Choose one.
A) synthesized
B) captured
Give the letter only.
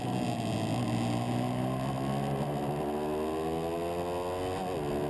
B